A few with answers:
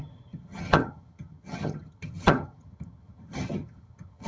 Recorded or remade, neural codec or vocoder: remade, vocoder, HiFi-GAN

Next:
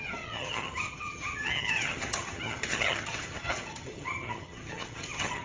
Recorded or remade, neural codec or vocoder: remade, vocoder, HiFi-GAN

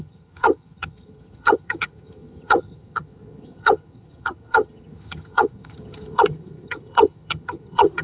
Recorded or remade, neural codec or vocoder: remade, vocoder, HiFi-GAN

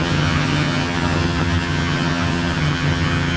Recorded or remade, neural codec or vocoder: remade, vocoder, HiFi-GAN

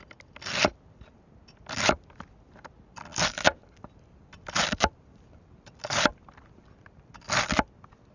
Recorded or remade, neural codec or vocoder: recorded